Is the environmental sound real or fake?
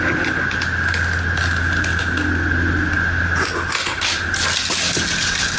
real